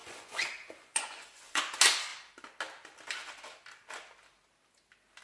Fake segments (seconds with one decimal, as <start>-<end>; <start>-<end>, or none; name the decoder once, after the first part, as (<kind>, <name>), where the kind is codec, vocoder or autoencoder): 0.0-1.6 (vocoder, Vocos)